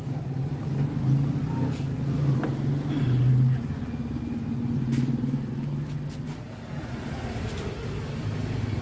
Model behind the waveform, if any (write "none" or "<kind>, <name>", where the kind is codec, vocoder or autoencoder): none